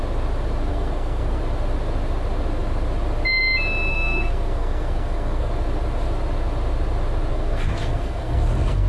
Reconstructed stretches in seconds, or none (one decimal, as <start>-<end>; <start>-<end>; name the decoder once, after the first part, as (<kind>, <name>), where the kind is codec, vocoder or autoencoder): 0.7-1.4 (codec, SNAC); 3.9-5.5; 7.3-8.9